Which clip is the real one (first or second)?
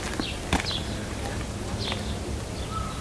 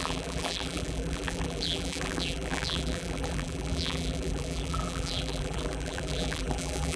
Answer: first